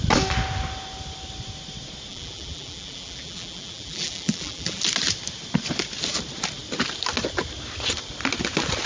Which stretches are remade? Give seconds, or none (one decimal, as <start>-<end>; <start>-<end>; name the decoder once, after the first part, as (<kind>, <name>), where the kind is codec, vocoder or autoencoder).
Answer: 2.1-4.8 (vocoder, BigVGAN v2)